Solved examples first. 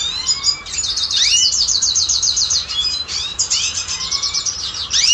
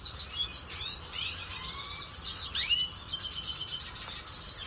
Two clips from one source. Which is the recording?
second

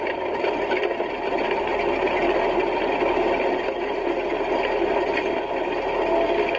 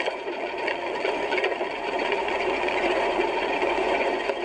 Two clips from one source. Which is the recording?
first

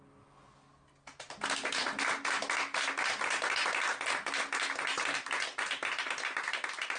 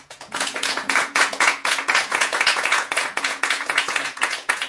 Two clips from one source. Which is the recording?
first